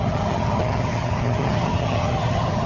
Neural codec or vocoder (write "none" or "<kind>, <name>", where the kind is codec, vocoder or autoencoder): vocoder, HiFi-GAN